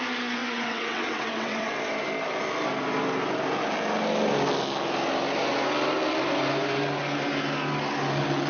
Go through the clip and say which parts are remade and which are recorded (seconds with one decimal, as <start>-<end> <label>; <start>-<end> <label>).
0.0-0.4 recorded; 0.4-1.8 remade; 1.8-8.5 recorded